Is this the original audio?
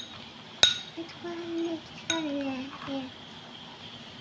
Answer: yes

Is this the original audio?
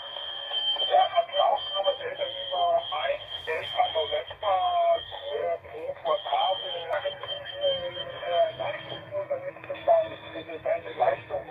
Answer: no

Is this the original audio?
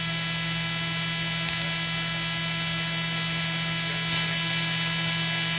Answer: yes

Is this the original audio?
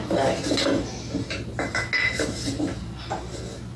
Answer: yes